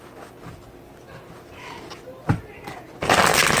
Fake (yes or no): no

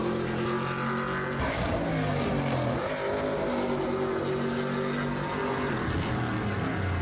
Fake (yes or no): no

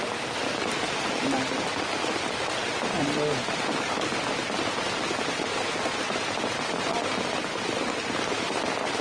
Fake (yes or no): no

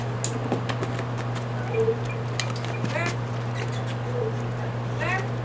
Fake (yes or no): no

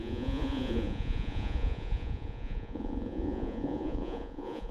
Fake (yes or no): yes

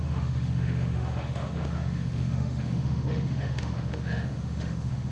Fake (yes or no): yes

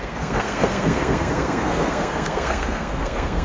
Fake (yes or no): yes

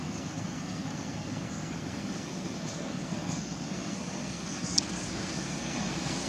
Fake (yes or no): yes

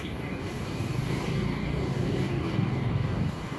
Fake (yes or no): yes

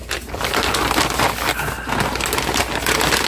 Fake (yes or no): no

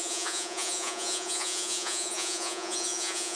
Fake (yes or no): yes